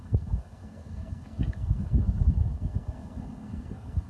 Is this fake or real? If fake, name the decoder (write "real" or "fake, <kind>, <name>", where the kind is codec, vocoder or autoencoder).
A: fake, codec, SNAC